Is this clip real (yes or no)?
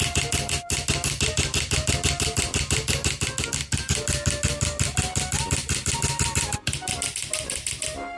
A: yes